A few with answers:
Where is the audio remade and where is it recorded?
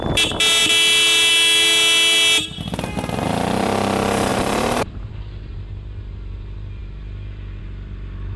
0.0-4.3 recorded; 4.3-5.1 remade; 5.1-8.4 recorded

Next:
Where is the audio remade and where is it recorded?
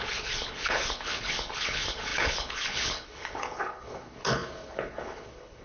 0.0-5.6 remade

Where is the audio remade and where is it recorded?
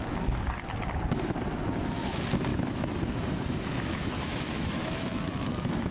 0.0-2.5 recorded; 2.5-5.9 remade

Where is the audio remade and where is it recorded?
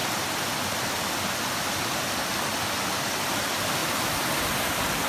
0.0-3.1 recorded; 3.1-3.8 remade; 3.8-5.1 recorded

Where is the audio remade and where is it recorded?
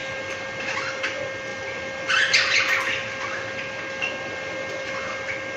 0.0-1.0 remade; 1.0-1.5 recorded; 1.5-4.9 remade; 4.9-5.6 recorded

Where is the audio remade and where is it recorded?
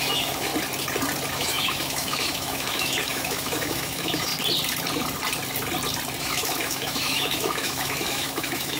0.0-0.5 remade; 0.5-1.3 recorded; 1.3-4.3 remade; 4.3-6.2 recorded; 6.2-8.8 remade